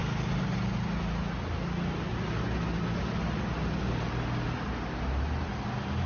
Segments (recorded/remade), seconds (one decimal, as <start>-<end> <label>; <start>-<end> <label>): 0.0-6.1 recorded